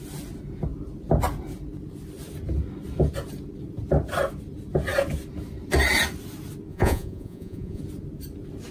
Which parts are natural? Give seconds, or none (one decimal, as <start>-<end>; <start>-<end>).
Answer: 0.0-6.7; 7.8-8.7